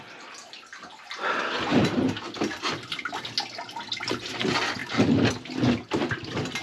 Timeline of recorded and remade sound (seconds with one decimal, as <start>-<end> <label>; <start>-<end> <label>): 0.0-6.6 recorded